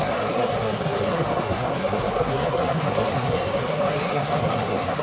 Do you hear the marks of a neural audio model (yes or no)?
yes